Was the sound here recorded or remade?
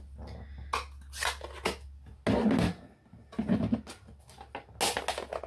recorded